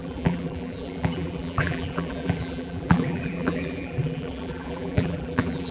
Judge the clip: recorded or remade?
remade